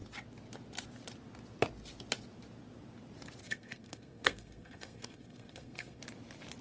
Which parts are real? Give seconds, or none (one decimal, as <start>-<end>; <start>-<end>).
0.0-3.4; 6.0-6.6